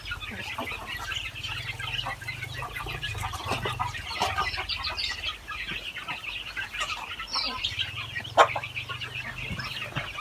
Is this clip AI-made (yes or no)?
no